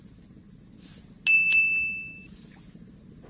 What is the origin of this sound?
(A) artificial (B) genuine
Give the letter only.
B